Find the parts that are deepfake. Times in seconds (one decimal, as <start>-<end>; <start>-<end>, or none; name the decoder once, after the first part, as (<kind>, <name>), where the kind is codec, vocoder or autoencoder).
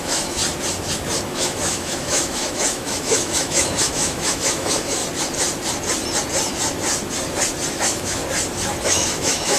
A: 0.0-0.4 (autoencoder, DAC-VAE); 1.3-5.0; 7.8-8.2; 8.8-9.6